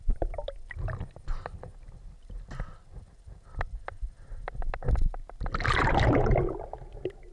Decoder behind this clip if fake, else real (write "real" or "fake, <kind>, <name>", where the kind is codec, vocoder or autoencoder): real